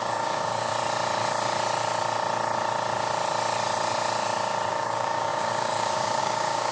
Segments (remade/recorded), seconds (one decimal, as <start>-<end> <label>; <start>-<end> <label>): 0.0-0.7 remade; 0.7-4.7 recorded; 4.7-6.7 remade